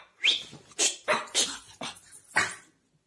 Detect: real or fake real